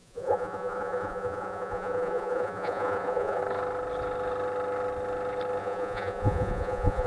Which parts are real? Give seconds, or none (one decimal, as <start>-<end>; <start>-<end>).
3.4-5.6